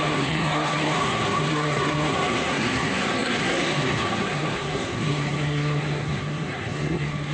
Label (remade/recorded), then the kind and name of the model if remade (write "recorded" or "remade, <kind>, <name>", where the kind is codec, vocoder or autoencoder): remade, codec, SNAC